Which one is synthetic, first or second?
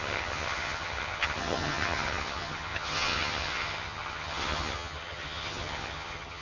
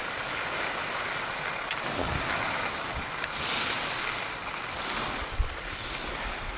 first